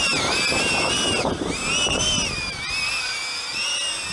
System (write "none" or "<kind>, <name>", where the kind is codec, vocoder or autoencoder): none